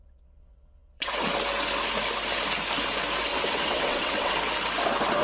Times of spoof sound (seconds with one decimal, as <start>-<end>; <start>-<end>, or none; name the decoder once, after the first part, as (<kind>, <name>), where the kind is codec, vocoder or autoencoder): 0.0-1.1 (vocoder, WaveNeXt); 3.3-4.3